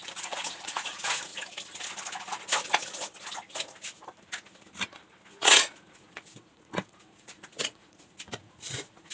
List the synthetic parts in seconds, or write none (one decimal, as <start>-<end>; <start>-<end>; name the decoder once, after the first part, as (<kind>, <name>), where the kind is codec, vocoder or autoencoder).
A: 0.0-1.3 (vocoder, Vocos); 5.3-9.1